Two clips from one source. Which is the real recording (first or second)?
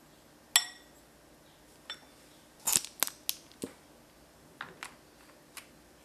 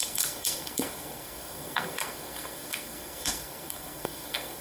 first